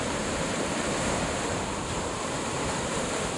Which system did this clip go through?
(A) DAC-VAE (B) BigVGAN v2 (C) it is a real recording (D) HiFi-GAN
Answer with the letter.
B